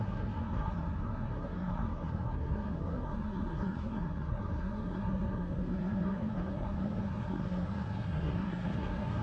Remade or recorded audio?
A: remade